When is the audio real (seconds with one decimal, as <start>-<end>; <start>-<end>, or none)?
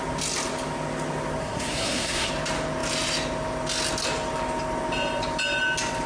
0.0-1.4; 2.3-6.1